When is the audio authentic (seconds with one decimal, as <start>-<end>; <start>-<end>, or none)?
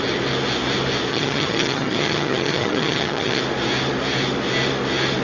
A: 0.0-1.1; 3.4-5.2